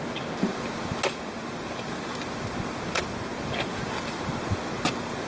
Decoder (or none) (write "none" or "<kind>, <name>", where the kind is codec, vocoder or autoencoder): none